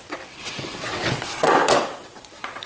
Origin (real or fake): fake